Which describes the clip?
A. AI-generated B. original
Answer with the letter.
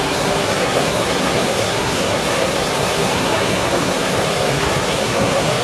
A